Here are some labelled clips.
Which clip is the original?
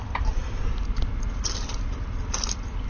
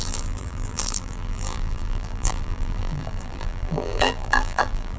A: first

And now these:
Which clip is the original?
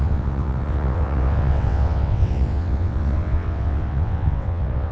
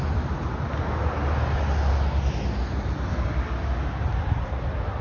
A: second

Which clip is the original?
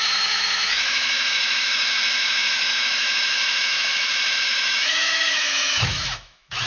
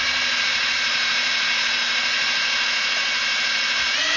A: second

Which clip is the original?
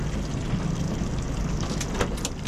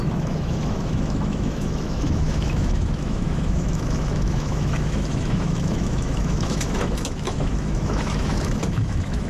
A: first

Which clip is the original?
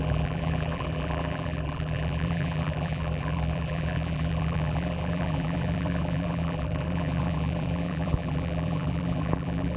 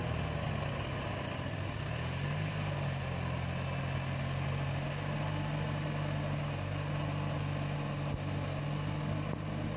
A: second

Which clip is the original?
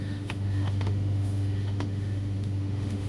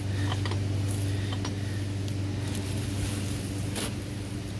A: second